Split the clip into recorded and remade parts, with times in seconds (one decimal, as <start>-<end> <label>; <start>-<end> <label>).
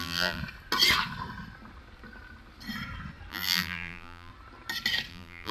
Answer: 0.0-0.4 remade; 0.4-3.3 recorded; 3.3-4.3 remade; 4.3-5.1 recorded; 5.1-5.5 remade